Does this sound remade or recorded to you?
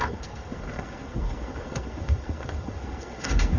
remade